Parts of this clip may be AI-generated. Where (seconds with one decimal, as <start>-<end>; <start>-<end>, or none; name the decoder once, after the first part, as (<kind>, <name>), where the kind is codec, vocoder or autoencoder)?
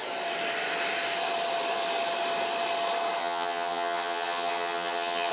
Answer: 3.2-5.3 (vocoder, HiFi-GAN)